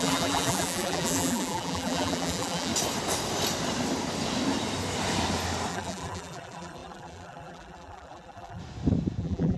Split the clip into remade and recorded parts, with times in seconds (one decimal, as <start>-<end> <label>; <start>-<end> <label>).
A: 0.0-2.7 remade; 2.7-5.7 recorded; 5.7-8.6 remade; 8.6-9.2 recorded; 9.2-9.6 remade